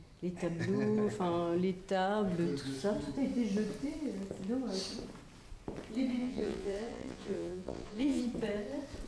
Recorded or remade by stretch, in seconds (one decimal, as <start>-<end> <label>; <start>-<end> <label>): 0.0-6.2 recorded; 6.2-8.2 remade; 8.2-9.1 recorded

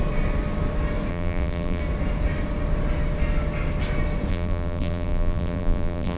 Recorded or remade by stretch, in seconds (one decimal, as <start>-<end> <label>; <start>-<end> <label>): 0.0-1.1 recorded; 1.1-1.8 remade; 1.8-4.3 recorded; 4.3-6.2 remade